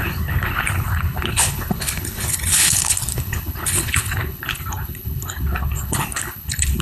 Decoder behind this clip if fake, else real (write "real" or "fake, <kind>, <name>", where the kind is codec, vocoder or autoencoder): fake, codec, HILCodec